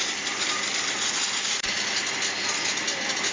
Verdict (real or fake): real